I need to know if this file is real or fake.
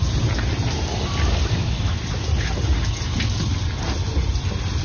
real